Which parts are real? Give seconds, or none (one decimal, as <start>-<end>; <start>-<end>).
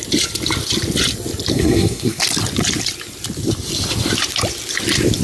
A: 0.0-1.5; 2.2-5.2